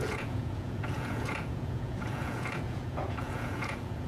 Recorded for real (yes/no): no